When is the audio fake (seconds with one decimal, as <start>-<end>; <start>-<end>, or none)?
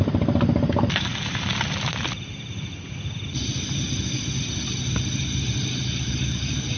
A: none